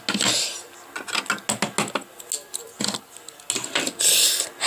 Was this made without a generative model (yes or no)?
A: yes